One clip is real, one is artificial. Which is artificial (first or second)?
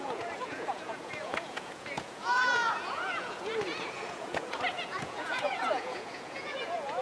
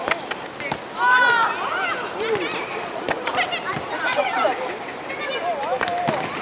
first